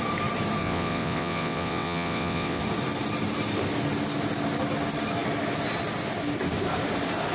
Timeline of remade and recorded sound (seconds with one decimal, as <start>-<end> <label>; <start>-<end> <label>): 0.0-0.6 recorded; 0.6-2.6 remade; 2.6-7.3 recorded